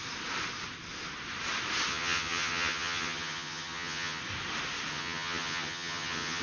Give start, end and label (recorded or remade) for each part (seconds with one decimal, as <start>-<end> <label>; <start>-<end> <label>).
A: 0.0-1.9 recorded; 1.9-4.2 remade; 4.2-4.9 recorded; 4.9-6.4 remade